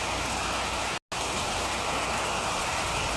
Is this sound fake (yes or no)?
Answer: no